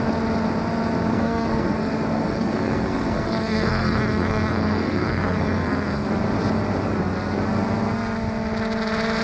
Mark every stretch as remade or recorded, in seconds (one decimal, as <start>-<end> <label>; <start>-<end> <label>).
0.0-1.1 recorded; 1.1-6.1 remade; 6.1-9.2 recorded